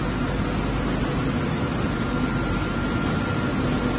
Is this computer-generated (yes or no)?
no